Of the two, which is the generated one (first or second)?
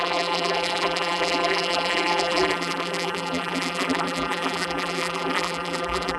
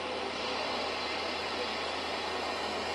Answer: first